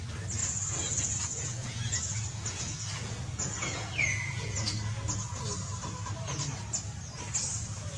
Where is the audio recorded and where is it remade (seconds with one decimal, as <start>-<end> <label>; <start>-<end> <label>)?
0.0-0.4 recorded; 0.4-4.7 remade; 4.7-8.0 recorded